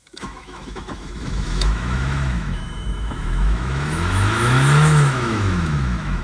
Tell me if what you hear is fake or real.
fake